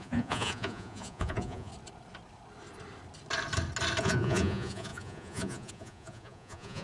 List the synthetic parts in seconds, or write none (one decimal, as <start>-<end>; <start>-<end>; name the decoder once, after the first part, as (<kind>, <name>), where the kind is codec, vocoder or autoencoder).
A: 0.0-1.7 (vocoder, Vocos); 4.0-6.8

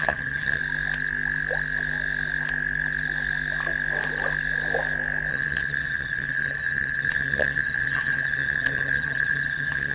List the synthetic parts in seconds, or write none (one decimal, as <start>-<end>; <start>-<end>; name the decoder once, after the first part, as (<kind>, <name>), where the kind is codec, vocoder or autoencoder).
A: 0.0-0.6 (vocoder, HiFi-GAN); 5.3-9.9

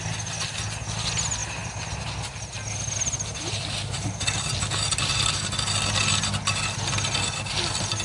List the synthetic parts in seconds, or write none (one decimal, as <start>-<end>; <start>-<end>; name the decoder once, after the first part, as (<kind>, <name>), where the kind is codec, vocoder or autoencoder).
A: none

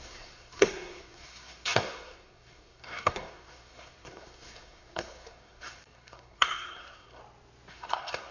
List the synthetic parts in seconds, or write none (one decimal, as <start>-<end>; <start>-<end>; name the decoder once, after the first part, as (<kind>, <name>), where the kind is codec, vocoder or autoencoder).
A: 0.0-7.2 (codec, SNAC); 7.7-8.3